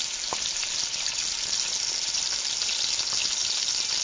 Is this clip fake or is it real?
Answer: real